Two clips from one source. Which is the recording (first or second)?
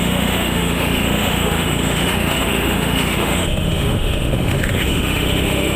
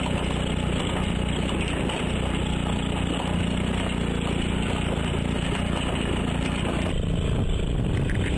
second